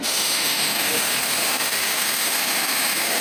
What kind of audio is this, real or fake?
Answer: fake